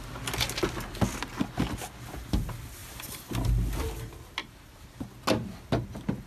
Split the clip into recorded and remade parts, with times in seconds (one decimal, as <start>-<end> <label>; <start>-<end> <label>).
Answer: 0.0-2.8 recorded; 2.8-3.3 remade; 3.3-4.4 recorded; 4.4-5.1 remade; 5.1-6.3 recorded